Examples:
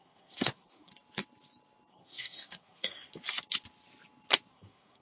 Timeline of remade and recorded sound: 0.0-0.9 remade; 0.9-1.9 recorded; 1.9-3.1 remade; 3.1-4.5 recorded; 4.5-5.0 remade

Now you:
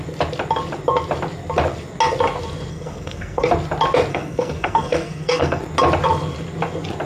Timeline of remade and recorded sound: 0.0-2.7 recorded; 2.7-3.5 remade; 3.5-4.1 recorded; 4.1-5.6 remade; 5.6-7.1 recorded

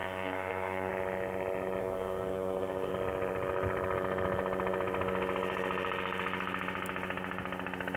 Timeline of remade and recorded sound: 0.0-0.9 remade; 0.9-1.8 recorded; 1.8-2.9 remade; 2.9-8.0 recorded